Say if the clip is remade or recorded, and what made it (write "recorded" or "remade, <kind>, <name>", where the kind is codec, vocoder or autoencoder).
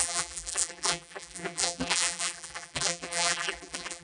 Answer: remade, vocoder, BigVGAN v2